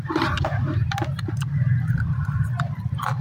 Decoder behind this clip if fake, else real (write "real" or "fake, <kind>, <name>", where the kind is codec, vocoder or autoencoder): fake, vocoder, BigVGAN v2